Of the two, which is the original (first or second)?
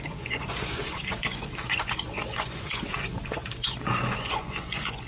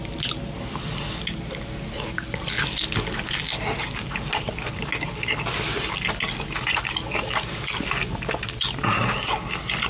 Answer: second